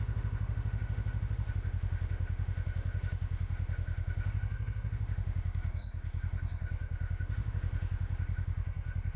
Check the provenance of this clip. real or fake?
fake